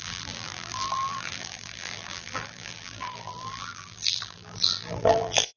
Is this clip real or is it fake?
fake